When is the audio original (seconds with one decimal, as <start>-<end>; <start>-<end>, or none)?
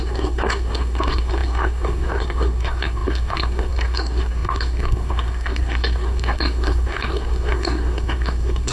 none